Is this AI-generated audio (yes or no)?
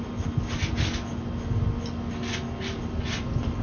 no